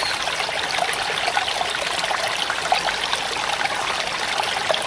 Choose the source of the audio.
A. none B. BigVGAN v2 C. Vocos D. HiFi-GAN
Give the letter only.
A